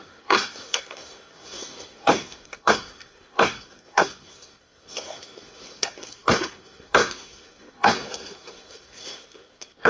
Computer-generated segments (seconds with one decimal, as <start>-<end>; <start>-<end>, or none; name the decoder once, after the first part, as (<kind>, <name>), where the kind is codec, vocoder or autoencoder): 0.0-9.9 (codec, SNAC)